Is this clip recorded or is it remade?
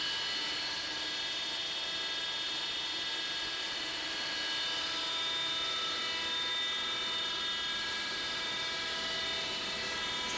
recorded